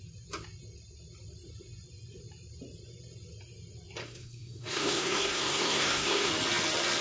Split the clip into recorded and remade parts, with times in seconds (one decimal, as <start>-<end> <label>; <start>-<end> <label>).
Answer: 0.0-4.0 recorded; 4.0-6.3 remade; 6.3-7.0 recorded